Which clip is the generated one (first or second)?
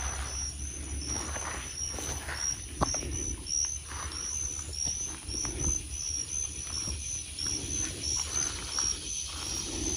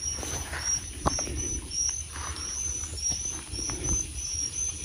second